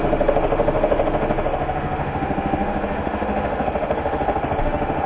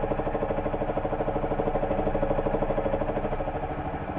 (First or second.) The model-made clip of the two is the first